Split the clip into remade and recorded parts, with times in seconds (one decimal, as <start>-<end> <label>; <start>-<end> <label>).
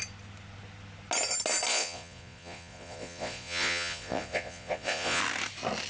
0.0-1.7 recorded; 1.7-5.2 remade; 5.2-5.9 recorded